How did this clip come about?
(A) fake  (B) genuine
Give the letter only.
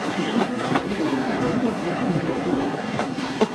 A